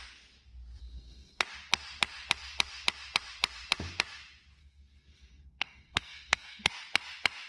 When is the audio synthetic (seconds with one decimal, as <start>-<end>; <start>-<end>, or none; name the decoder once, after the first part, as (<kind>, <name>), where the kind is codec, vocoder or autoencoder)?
0.8-1.4 (codec, SNAC); 4.6-6.7